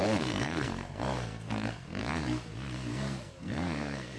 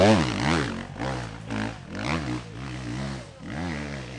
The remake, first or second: first